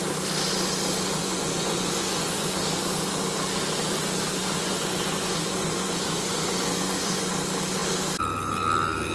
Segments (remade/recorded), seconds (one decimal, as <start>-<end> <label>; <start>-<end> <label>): 0.0-1.2 recorded; 1.2-2.5 remade; 2.5-4.4 recorded; 4.4-7.3 remade; 7.3-9.1 recorded